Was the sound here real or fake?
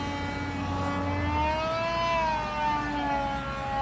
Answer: real